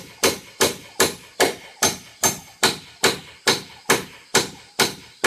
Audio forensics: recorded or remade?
recorded